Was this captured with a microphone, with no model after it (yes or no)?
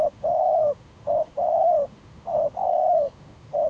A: no